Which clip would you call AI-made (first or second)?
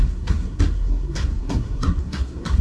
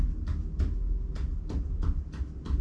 first